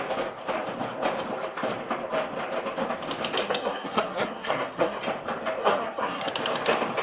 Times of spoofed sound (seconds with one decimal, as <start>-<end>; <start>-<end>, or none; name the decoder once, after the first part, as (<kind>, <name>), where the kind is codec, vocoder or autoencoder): 3.4-5.0 (codec, SNAC); 5.6-6.3